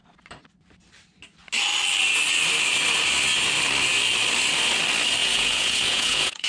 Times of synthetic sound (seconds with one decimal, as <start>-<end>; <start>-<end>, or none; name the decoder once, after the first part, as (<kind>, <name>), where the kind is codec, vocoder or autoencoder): 5.2-6.5 (vocoder, Vocos)